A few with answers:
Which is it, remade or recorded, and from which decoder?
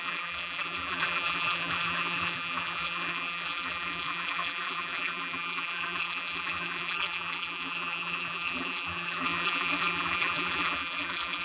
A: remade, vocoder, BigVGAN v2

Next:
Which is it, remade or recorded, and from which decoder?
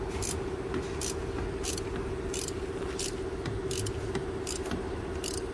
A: recorded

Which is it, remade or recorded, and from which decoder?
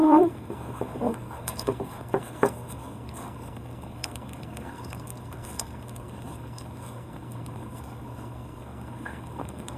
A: remade, codec, SNAC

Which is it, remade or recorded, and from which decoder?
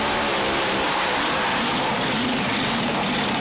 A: remade, vocoder, BigVGAN v2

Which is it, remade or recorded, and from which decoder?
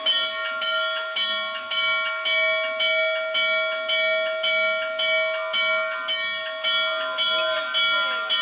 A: recorded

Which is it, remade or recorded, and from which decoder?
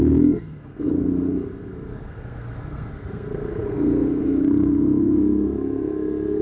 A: remade, codec, SNAC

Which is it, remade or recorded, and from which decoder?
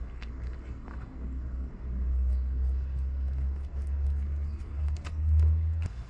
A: remade, codec, SNAC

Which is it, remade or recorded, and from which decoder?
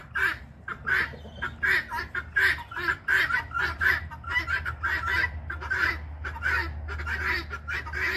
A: recorded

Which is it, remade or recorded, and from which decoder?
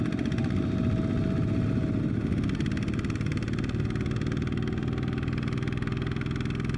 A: recorded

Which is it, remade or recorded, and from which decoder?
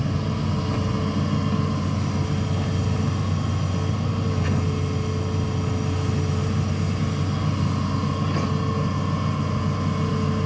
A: recorded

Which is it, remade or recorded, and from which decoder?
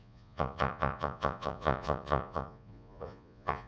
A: remade, vocoder, Vocos